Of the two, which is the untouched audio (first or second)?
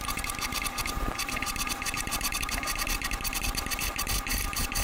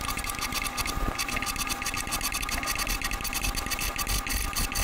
second